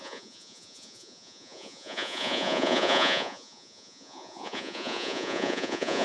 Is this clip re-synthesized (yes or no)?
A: yes